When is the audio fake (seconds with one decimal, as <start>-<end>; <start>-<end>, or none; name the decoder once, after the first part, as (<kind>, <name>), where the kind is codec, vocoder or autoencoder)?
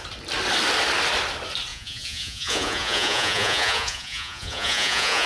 1.7-5.3 (vocoder, Vocos)